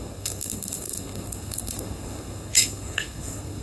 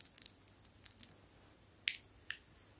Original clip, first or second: second